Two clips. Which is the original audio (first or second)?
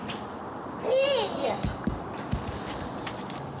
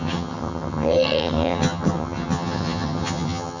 first